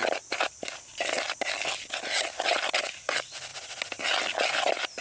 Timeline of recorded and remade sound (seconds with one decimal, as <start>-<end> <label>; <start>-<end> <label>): 0.0-3.0 recorded; 3.0-3.5 remade; 3.5-5.0 recorded